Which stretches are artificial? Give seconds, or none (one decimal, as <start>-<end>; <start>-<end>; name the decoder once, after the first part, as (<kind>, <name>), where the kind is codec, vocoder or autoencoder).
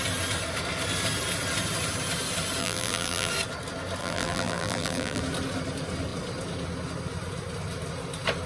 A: 2.6-3.3 (vocoder, BigVGAN v2); 4.0-5.2